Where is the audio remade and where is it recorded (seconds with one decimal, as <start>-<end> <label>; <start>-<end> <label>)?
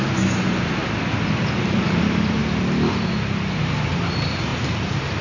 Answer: 0.0-0.8 remade; 0.8-1.5 recorded; 1.5-2.4 remade; 2.4-3.6 recorded; 3.6-5.2 remade